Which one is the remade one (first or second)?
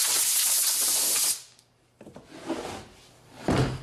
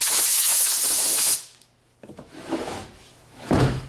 second